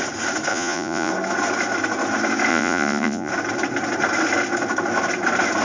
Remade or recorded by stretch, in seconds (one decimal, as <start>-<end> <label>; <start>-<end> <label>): 0.0-0.5 recorded; 0.5-1.1 remade; 1.1-2.5 recorded; 2.5-3.3 remade; 3.3-5.6 recorded